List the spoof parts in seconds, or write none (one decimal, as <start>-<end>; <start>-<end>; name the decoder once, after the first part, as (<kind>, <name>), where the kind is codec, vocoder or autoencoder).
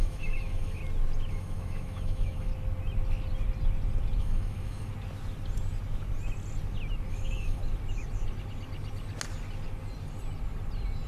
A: 0.0-0.8 (autoencoder, DAC-VAE); 1.3-2.5; 4.2-4.9; 7.1-7.6